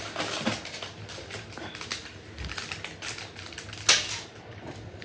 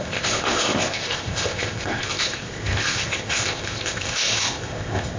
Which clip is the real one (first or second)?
first